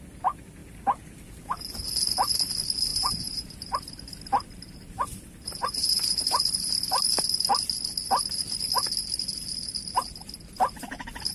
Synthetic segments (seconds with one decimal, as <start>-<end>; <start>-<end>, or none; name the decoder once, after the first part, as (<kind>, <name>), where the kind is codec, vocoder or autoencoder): 2.9-6.7 (vocoder, BigVGAN v2)